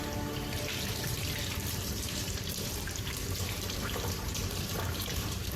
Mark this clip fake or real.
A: fake